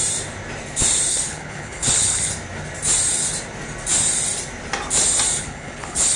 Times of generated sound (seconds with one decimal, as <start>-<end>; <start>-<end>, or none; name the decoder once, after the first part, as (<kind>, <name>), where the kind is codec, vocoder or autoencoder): 1.1-2.3 (codec, HILCodec); 5.4-6.2